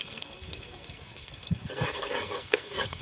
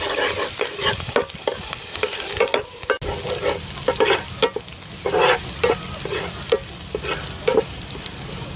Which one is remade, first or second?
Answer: first